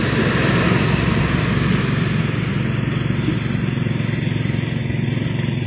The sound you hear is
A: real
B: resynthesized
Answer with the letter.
A